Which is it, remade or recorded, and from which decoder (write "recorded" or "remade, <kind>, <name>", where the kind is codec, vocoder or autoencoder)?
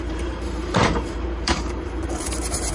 remade, vocoder, BigVGAN v2